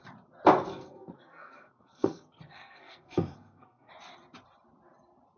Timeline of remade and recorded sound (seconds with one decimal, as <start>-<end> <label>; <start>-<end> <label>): 0.0-0.7 recorded; 0.7-3.9 remade; 3.9-5.4 recorded